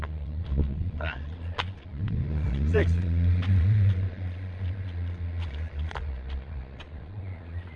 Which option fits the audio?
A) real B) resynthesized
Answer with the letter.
B